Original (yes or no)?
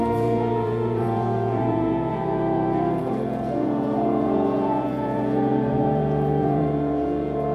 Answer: no